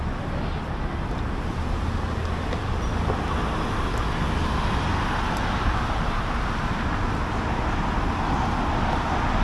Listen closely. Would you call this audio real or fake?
real